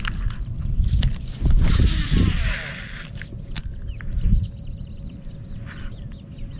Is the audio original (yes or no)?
no